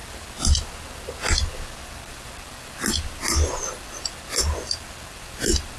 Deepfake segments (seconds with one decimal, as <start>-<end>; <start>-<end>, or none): none